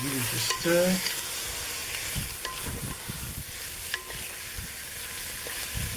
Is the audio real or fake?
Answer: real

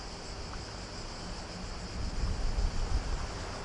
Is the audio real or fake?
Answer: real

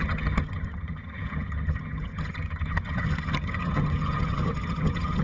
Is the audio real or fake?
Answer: fake